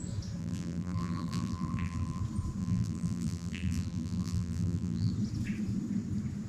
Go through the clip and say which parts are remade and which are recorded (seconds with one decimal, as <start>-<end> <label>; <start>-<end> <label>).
0.0-0.4 recorded; 0.4-2.2 remade; 2.2-2.6 recorded; 2.6-5.1 remade; 5.1-6.5 recorded

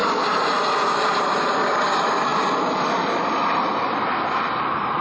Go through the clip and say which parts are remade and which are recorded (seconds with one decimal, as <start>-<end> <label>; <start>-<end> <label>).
0.0-5.0 recorded

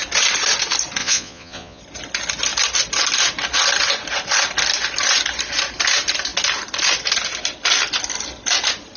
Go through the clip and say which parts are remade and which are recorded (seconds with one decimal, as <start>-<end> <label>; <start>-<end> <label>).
0.0-1.0 recorded; 1.0-1.8 remade; 1.8-9.0 recorded